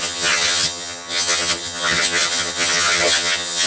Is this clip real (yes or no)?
no